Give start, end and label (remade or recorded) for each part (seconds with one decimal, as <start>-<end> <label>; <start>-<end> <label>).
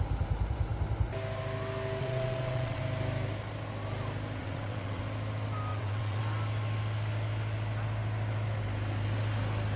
0.0-2.0 recorded; 2.0-2.8 remade; 2.8-4.4 recorded; 4.4-5.0 remade; 5.0-5.7 recorded; 5.7-6.2 remade; 6.2-9.8 recorded